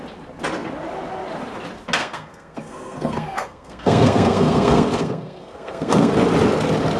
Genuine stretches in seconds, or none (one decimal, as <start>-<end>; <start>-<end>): 0.0-2.0; 6.1-7.0

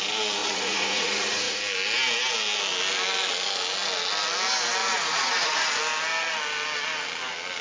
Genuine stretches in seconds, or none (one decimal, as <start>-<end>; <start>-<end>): 0.0-0.4; 1.6-4.8; 5.7-7.6